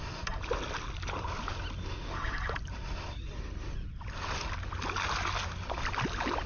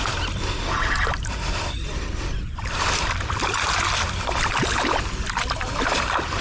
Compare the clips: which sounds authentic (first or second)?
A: first